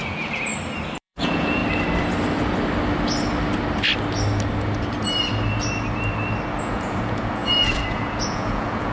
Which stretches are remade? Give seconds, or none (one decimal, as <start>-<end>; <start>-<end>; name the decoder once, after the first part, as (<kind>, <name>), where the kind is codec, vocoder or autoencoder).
0.0-0.5 (vocoder, Vocos); 1.0-1.6; 6.6-8.9